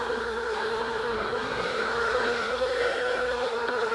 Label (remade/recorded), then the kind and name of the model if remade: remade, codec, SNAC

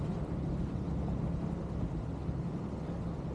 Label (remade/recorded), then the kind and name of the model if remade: recorded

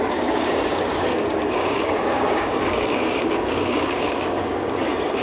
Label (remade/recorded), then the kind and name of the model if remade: remade, codec, DAC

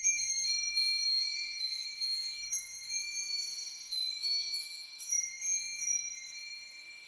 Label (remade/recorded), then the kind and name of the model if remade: remade, autoencoder, DAC-VAE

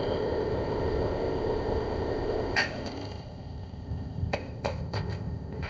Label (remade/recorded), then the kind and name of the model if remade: remade, codec, ZipCodec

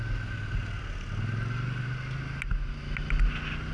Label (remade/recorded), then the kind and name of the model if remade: recorded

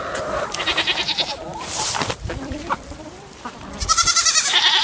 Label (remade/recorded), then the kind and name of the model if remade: remade, vocoder, BigVGAN v2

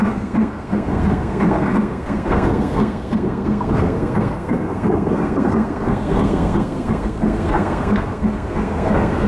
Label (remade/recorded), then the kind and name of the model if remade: remade, codec, SNAC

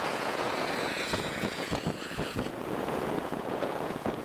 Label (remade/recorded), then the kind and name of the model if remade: remade, vocoder, Vocos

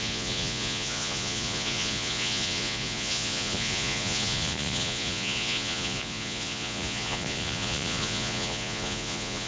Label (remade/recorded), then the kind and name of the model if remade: remade, vocoder, Vocos